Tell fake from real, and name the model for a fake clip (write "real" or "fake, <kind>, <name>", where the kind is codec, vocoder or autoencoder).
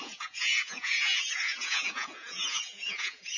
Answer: fake, vocoder, Vocos